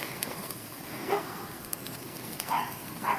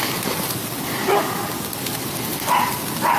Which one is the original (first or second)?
second